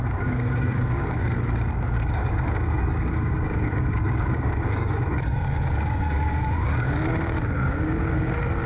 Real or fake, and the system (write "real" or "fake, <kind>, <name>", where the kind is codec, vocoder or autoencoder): fake, codec, DAC